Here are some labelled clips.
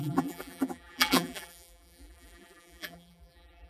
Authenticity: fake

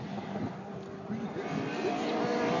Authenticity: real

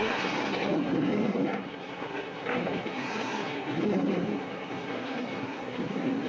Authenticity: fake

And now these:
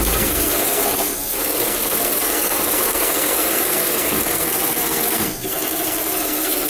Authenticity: fake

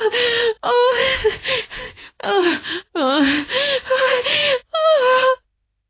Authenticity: fake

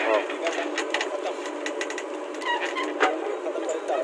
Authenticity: real